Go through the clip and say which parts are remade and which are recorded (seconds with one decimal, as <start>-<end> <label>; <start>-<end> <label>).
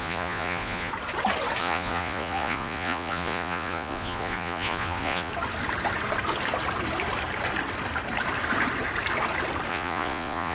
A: 0.0-0.9 remade; 0.9-1.6 recorded; 1.6-5.3 remade; 5.3-9.7 recorded; 9.7-10.5 remade